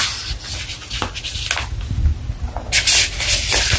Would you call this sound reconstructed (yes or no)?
no